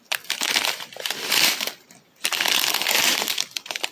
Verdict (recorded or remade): recorded